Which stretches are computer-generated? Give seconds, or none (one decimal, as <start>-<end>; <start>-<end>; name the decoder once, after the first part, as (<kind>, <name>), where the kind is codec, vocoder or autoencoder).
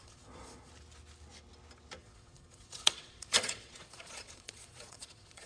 0.0-0.7 (vocoder, Vocos); 2.0-5.5